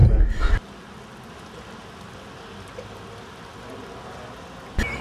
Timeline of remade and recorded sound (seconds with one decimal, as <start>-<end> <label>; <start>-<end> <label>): 0.0-5.0 recorded